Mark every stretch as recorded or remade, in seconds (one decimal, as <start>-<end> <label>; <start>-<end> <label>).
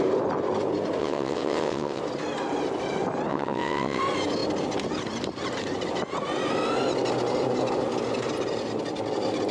0.0-1.0 recorded; 1.0-2.0 remade; 2.0-3.3 recorded; 3.3-4.0 remade; 4.0-9.5 recorded